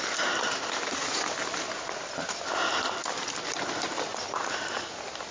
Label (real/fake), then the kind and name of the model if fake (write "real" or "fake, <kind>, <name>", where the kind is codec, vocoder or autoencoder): real